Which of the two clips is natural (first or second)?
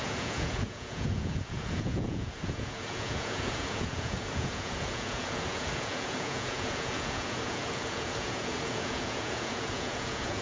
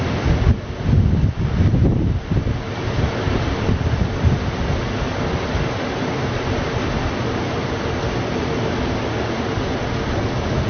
second